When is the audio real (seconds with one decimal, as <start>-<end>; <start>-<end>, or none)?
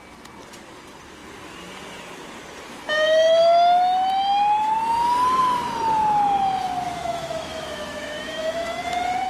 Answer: 0.0-7.0; 8.8-9.3